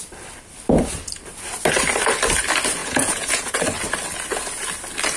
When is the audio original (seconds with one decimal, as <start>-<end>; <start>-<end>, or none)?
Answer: 0.0-2.8; 3.6-5.2

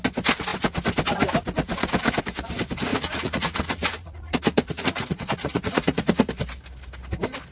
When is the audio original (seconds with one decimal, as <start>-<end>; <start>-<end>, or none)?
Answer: 0.0-2.9; 6.3-7.5

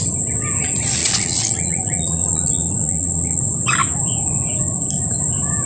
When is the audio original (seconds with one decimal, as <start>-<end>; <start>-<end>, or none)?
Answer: 0.0-1.0; 3.4-5.7

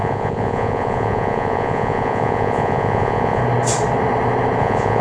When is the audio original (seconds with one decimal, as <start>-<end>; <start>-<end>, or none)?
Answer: 3.4-4.6

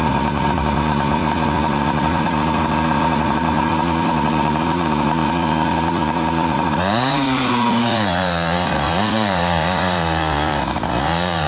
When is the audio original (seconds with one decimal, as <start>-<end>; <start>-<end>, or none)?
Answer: none

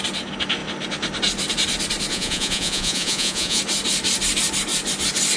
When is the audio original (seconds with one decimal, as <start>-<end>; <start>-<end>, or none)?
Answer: 0.0-2.1; 3.6-5.4

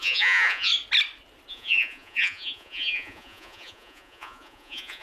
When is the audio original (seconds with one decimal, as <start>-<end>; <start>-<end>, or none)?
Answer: 0.7-1.5

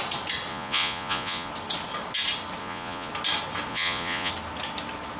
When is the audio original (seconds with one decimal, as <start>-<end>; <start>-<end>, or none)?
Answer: 0.0-0.5; 1.5-2.6; 3.1-3.7; 4.3-5.2